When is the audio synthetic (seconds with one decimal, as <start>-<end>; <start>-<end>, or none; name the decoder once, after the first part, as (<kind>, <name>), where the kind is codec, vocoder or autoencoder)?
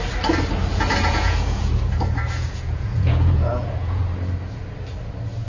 0.7-4.0 (vocoder, Vocos)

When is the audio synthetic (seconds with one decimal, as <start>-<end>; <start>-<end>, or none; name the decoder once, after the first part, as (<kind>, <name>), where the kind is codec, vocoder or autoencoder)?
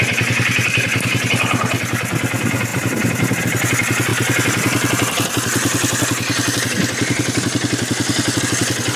2.7-3.4 (vocoder, BigVGAN v2)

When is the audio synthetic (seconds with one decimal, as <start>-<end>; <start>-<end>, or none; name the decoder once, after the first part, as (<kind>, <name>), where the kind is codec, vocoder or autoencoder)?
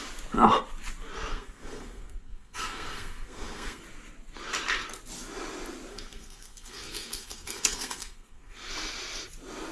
1.3-3.8 (codec, SNAC); 5.9-8.7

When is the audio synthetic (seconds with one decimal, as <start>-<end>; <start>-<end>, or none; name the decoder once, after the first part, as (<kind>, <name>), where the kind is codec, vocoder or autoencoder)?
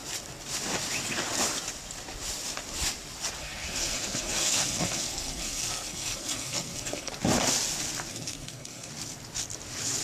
3.4-7.1 (codec, SNAC); 8.1-8.9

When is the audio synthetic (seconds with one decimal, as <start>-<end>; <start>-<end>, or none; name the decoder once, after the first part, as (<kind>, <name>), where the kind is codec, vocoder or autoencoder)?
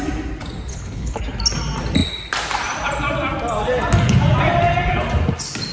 0.7-1.2 (codec, HILCodec)